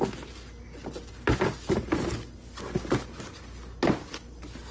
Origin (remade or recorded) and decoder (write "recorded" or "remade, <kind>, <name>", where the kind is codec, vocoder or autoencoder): recorded